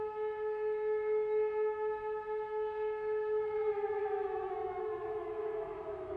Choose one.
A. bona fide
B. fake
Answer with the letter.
B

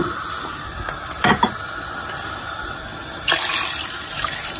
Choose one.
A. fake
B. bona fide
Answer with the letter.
B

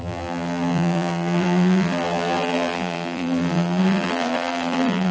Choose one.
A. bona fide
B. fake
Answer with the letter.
B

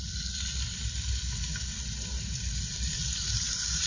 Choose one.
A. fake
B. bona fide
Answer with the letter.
B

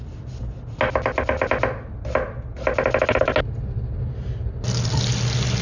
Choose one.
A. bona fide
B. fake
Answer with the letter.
A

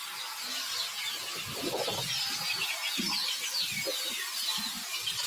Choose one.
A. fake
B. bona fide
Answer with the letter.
B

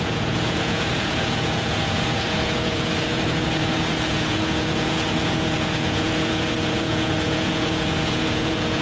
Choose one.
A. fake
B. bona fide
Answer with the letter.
A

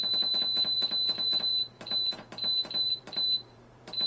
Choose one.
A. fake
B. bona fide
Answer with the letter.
A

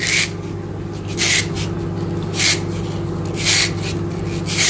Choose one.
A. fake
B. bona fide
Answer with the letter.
B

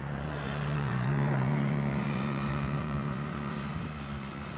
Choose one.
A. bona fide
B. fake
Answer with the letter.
B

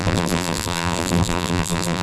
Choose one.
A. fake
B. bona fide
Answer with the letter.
A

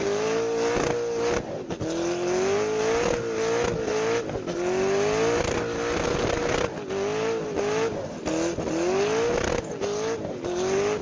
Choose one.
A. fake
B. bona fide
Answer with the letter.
B